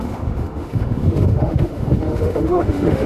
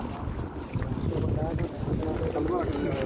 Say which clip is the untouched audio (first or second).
second